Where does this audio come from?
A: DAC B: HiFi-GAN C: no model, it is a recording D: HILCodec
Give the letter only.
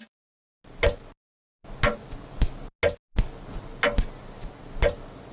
C